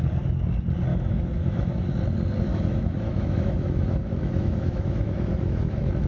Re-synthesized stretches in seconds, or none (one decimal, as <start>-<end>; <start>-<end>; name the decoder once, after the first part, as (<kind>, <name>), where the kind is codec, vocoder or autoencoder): 0.9-1.9 (autoencoder, DAC-VAE); 2.5-6.1